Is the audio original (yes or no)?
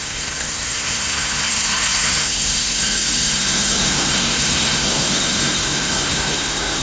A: no